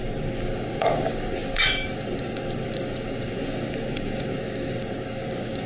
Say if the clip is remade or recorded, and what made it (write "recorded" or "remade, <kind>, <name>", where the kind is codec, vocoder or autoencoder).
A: remade, codec, DAC